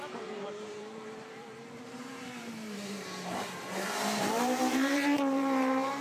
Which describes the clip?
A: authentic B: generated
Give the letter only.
B